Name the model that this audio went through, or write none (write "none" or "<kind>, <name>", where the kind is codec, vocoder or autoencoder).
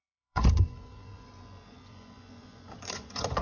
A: vocoder, Vocos